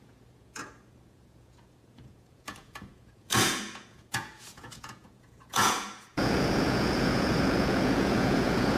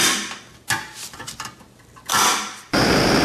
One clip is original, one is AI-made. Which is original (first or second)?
second